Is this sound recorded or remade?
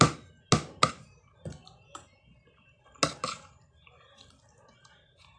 recorded